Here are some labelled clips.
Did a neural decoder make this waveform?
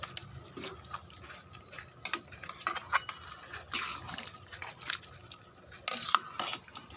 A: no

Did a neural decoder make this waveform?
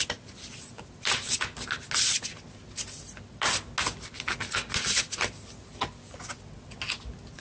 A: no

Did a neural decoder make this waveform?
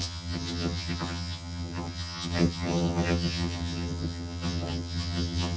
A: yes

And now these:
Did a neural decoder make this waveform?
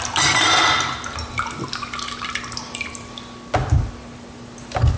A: no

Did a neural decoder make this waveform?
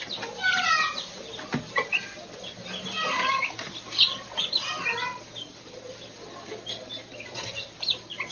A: no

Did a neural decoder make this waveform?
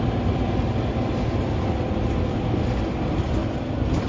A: no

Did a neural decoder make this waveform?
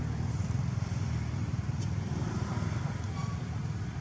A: no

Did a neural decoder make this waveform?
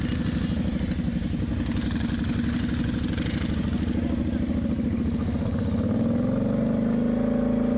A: no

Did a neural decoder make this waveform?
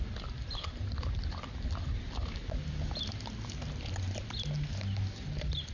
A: no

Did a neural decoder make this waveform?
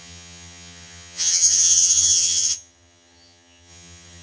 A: yes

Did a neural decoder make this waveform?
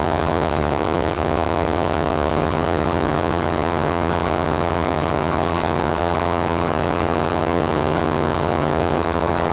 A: yes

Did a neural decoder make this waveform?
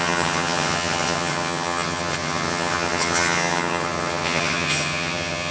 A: yes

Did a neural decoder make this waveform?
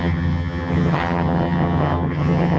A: yes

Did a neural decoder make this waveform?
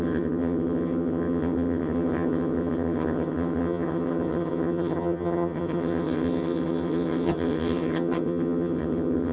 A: yes